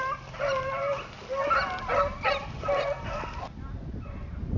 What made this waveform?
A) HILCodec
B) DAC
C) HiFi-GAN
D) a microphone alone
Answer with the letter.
D